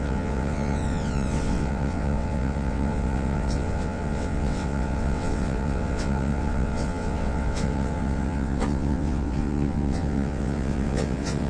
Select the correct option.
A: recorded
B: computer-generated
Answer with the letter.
B